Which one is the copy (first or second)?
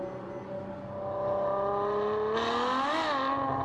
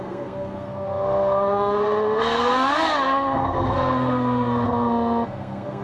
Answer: second